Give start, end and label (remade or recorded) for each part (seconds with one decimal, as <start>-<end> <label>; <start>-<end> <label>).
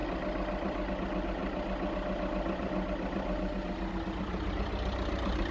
0.0-5.5 recorded